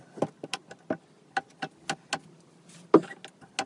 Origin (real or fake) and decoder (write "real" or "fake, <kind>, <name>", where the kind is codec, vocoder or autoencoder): real